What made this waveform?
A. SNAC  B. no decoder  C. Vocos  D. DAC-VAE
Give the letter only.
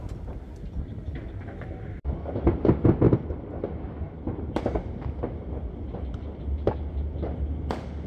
B